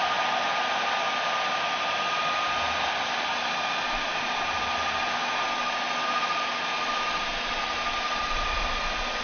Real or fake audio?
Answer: real